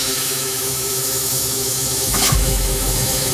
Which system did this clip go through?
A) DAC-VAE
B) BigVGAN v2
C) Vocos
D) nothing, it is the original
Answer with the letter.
A